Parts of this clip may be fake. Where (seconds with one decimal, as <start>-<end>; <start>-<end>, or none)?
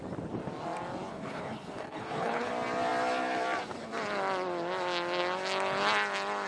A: 1.1-2.5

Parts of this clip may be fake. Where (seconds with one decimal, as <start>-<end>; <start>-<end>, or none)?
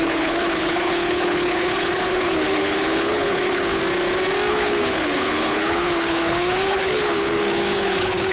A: 0.0-3.8; 4.5-8.3